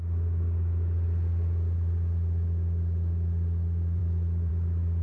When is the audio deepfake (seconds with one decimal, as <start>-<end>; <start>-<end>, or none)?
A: none